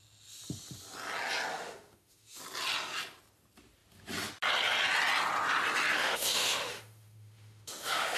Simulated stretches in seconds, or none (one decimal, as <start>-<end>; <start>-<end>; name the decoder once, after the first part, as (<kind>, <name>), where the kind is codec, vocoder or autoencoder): 1.5-2.4 (autoencoder, DAC-VAE); 6.0-8.2